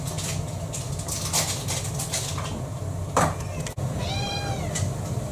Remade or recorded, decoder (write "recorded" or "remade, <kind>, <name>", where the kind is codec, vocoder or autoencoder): recorded